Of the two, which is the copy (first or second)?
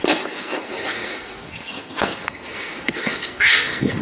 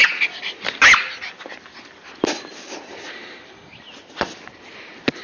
first